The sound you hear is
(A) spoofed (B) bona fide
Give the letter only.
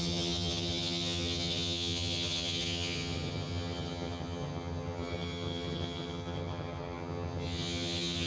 A